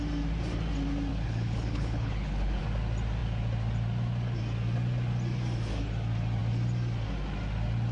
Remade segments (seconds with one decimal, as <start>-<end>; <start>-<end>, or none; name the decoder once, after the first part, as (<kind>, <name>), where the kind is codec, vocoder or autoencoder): 1.1-2.6 (codec, HILCodec)